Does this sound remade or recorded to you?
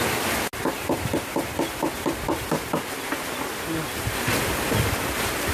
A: recorded